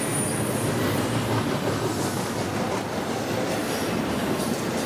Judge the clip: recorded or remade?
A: recorded